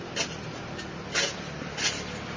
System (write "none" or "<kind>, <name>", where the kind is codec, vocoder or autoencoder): none